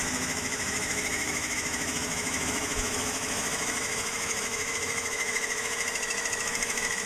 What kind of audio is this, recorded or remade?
remade